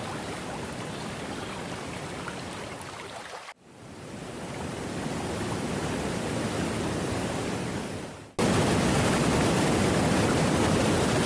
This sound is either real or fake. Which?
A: real